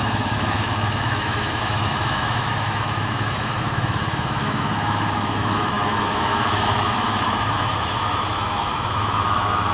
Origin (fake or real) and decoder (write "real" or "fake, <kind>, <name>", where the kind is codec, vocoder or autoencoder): fake, autoencoder, DAC-VAE